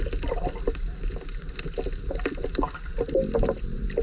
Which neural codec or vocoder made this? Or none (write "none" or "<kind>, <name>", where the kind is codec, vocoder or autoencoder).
none